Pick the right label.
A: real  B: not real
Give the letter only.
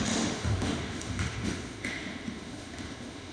B